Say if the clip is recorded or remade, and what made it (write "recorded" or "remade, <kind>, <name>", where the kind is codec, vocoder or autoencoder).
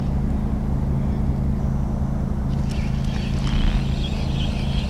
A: recorded